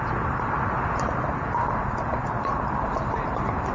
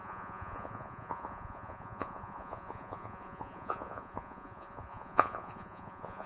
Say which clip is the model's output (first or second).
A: second